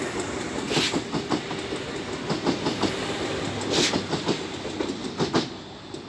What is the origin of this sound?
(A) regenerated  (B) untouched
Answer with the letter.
B